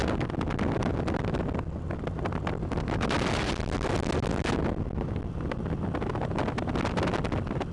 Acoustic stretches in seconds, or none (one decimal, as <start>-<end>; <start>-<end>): 0.0-7.7